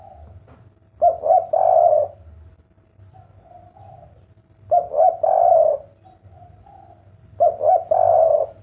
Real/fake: real